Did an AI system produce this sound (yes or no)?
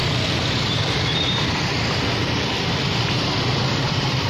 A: yes